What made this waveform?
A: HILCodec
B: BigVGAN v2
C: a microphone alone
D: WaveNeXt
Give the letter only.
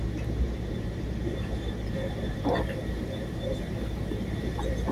B